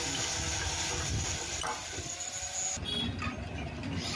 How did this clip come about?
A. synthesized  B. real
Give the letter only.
B